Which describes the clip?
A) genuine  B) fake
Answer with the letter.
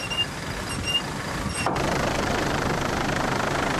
B